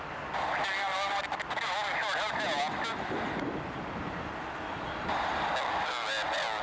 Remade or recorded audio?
recorded